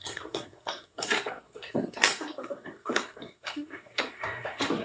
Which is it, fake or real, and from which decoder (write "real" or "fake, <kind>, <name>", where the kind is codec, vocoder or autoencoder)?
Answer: fake, codec, SNAC